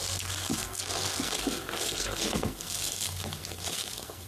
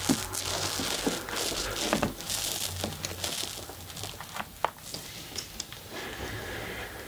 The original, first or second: second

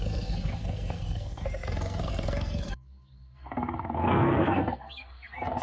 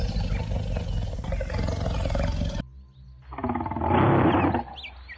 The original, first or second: second